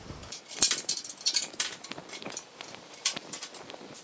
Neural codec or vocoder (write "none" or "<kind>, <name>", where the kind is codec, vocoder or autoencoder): vocoder, BigVGAN v2